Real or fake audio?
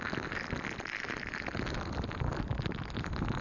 real